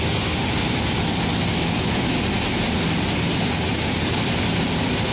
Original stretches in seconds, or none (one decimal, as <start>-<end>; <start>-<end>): 0.0-5.1